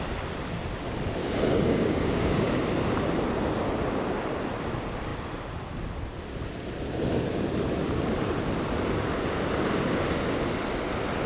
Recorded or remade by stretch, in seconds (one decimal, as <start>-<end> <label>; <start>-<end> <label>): 0.0-1.2 recorded; 1.2-2.5 remade; 2.5-11.3 recorded